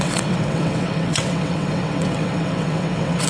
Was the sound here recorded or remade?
remade